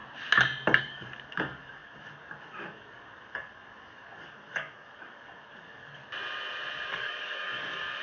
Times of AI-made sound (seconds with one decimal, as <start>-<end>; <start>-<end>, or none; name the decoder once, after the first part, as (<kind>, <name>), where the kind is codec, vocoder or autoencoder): 0.8-6.0 (codec, DAC); 6.9-8.0

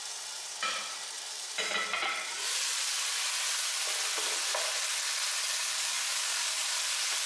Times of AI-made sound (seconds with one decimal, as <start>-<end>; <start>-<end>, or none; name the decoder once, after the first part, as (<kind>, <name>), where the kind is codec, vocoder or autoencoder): 5.6-6.6 (codec, DAC)

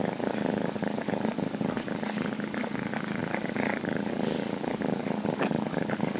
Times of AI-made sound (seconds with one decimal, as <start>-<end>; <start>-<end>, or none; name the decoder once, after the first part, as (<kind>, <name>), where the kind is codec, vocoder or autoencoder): 0.0-6.2 (codec, DAC)

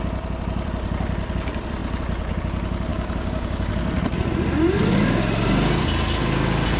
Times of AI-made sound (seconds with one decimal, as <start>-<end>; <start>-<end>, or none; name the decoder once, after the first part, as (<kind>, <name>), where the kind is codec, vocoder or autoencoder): 2.9-3.7 (codec, DAC)

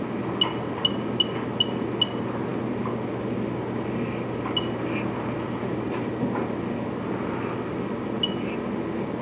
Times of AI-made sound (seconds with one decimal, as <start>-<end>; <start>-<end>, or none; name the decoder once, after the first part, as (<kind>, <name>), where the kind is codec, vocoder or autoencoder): none

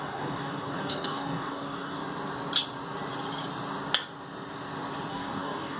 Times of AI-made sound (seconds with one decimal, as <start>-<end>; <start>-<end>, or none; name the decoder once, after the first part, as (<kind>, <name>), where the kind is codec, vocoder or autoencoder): 0.0-2.0 (codec, DAC); 5.1-5.8

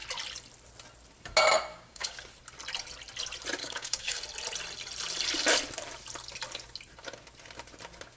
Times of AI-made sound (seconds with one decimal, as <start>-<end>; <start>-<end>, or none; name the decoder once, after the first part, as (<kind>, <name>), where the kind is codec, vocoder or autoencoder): 1.7-2.2 (codec, DAC); 3.6-4.2